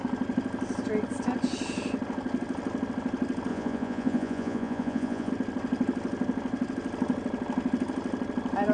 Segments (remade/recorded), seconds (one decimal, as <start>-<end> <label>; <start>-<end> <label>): 0.0-3.5 recorded; 3.5-5.3 remade; 5.3-8.7 recorded